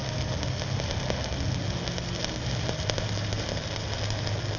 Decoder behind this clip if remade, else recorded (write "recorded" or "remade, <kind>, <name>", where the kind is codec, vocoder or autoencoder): recorded